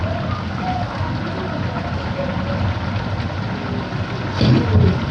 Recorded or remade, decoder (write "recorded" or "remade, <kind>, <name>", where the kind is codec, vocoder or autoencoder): recorded